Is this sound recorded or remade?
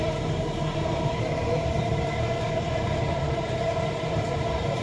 remade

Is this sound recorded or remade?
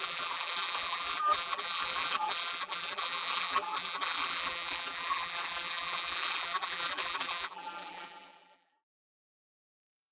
remade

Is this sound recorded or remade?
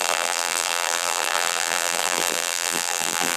remade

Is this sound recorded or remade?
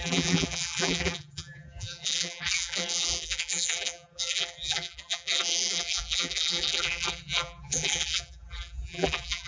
remade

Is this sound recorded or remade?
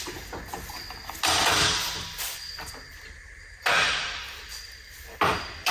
recorded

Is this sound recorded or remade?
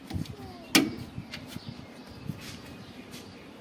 recorded